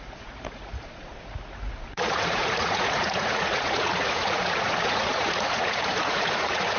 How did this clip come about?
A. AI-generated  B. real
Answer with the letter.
A